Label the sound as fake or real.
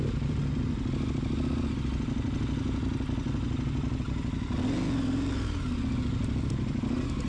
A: real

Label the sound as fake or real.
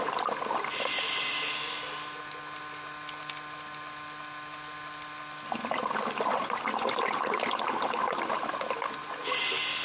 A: real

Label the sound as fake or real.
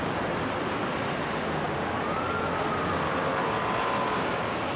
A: real